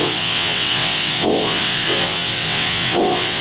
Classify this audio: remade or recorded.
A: remade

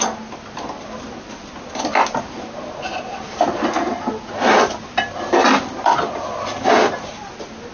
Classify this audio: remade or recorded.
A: recorded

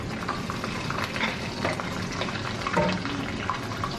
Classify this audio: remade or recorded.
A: recorded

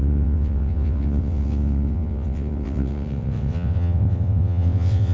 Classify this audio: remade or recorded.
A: remade